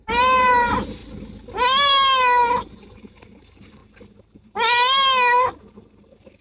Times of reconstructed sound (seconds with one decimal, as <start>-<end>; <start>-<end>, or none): 0.0-1.0; 2.7-3.8